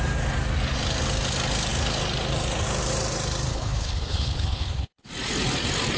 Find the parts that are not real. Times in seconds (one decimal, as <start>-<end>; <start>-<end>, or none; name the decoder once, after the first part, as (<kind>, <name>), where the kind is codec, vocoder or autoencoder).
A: 3.5-5.1 (codec, HILCodec)